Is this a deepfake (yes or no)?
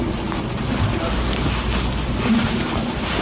no